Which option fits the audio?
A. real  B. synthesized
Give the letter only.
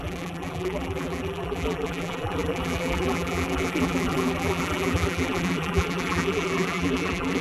B